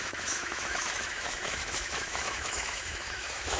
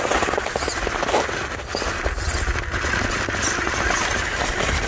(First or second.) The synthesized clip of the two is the first